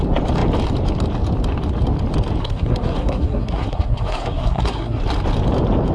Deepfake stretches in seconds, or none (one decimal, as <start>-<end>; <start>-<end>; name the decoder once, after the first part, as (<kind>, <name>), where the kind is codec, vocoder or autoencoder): 2.4-5.0 (codec, SNAC)